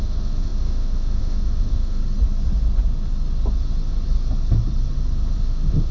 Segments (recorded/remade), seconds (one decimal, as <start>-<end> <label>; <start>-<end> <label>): 0.0-2.0 remade; 2.0-5.5 recorded; 5.5-5.9 remade